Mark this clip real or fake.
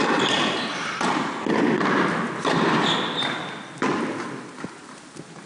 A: real